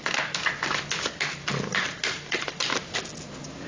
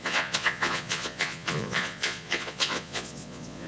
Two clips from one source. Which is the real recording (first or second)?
first